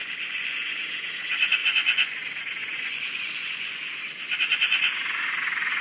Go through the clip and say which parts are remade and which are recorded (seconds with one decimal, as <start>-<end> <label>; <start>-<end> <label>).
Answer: 0.0-0.8 remade; 0.8-1.6 recorded; 1.6-2.2 remade; 2.2-2.6 recorded; 2.6-3.8 remade; 3.8-5.8 recorded